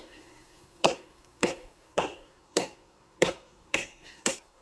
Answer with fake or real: fake